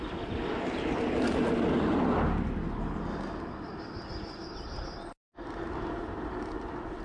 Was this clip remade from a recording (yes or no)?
no